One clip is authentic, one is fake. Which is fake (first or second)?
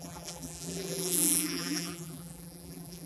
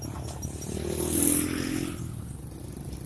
first